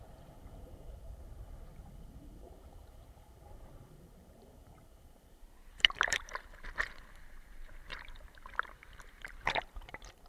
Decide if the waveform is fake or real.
fake